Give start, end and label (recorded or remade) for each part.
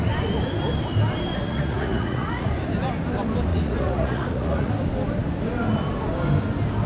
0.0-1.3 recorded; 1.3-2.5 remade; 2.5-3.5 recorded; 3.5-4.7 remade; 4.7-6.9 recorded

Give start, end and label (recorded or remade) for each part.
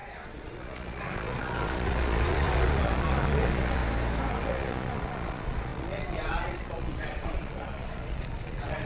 0.0-3.8 remade; 3.8-4.3 recorded; 4.3-8.9 remade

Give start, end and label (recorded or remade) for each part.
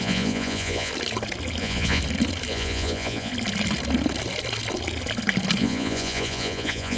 0.0-0.9 remade; 0.9-1.6 recorded; 1.6-2.0 remade; 2.0-2.5 recorded; 2.5-3.3 remade; 3.3-5.6 recorded; 5.6-7.0 remade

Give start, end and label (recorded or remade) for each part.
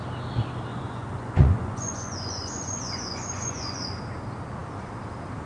0.0-0.7 recorded; 0.7-4.0 remade; 4.0-5.5 recorded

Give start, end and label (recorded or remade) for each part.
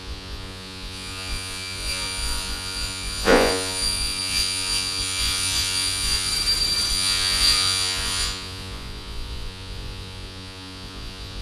0.0-6.3 remade; 6.3-6.9 recorded; 6.9-11.4 remade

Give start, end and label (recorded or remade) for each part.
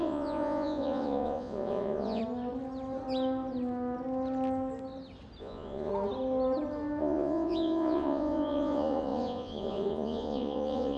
0.0-2.2 remade; 2.2-5.4 recorded; 5.4-5.9 remade; 5.9-7.0 recorded; 7.0-11.0 remade